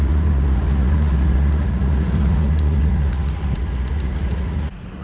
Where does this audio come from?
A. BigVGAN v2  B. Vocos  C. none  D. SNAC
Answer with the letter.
B